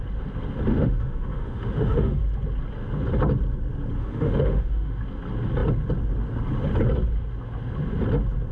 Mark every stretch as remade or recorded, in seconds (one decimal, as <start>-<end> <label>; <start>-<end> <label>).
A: 0.0-0.7 recorded; 0.7-2.2 remade; 2.2-4.0 recorded; 4.0-5.0 remade; 5.0-8.5 recorded